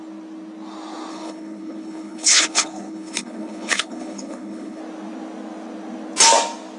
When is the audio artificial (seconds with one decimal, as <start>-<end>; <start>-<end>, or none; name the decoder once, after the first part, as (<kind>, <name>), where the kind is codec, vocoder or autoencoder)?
1.1-4.8 (codec, HILCodec)

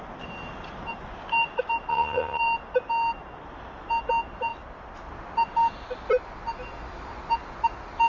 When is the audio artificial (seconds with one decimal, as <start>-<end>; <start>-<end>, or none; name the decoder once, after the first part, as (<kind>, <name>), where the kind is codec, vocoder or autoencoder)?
1.9-2.4 (vocoder, HiFi-GAN)